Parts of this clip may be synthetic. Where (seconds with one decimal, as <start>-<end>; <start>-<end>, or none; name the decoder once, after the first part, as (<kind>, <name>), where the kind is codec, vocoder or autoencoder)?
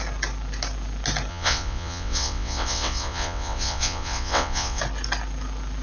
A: 1.3-4.8 (vocoder, WaveNeXt)